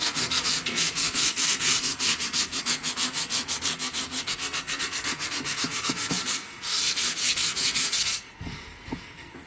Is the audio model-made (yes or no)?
yes